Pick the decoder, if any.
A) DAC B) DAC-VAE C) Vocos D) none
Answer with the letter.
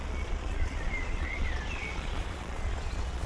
C